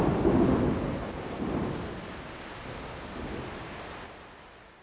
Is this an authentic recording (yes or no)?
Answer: yes